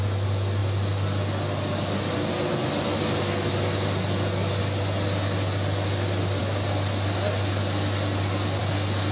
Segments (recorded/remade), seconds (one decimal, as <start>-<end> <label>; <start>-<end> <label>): 0.0-9.1 recorded